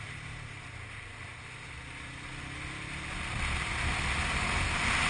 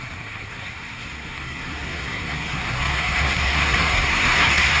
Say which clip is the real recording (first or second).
first